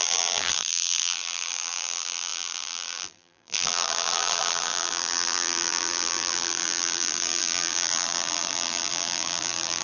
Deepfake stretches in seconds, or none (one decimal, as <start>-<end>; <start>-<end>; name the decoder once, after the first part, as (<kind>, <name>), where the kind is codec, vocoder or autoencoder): 0.0-9.8 (vocoder, BigVGAN v2)